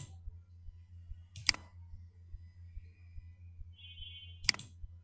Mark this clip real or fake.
real